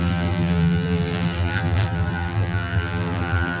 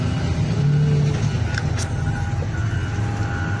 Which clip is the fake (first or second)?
first